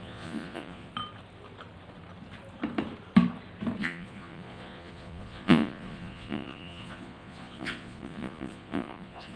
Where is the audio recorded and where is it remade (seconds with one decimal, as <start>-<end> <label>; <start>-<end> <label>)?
0.0-0.9 remade; 0.9-3.8 recorded; 3.8-9.4 remade